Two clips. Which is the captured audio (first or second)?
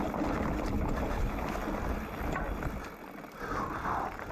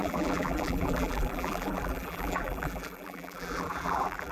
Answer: first